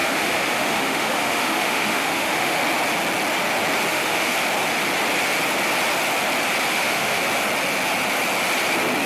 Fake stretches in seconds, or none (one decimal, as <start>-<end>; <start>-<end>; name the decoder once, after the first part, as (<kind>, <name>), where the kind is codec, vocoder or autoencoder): 0.0-2.6 (autoencoder, DAC-VAE); 3.9-4.3; 6.7-7.2